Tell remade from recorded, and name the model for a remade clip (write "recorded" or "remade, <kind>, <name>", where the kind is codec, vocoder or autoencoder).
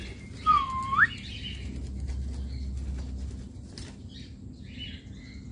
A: recorded